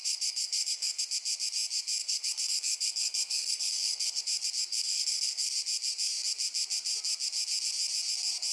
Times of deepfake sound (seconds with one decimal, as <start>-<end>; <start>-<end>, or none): 0.0-1.0; 2.0-4.2; 4.7-5.5